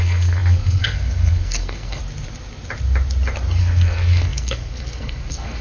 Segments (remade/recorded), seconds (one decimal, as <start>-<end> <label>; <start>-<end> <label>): 0.0-2.0 remade; 2.0-3.6 recorded; 3.6-5.6 remade